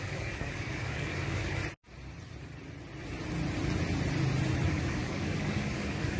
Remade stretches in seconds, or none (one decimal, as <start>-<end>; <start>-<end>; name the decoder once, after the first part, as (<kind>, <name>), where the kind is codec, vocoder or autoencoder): 0.0-1.6 (codec, DAC); 4.7-6.2